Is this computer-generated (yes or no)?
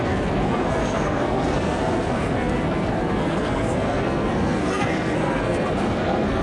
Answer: yes